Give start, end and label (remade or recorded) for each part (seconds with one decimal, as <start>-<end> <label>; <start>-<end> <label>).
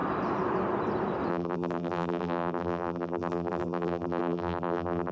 0.0-1.3 recorded; 1.3-5.1 remade